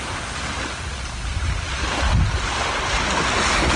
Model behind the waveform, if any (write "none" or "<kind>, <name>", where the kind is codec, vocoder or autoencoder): none